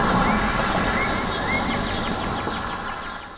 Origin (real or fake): real